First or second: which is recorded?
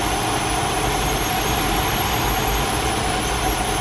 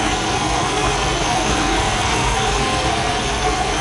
first